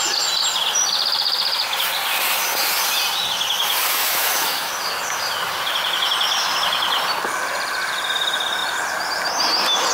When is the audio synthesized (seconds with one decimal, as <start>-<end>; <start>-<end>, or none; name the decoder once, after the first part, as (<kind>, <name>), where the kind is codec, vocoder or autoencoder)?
4.0-4.7 (autoencoder, DAC-VAE)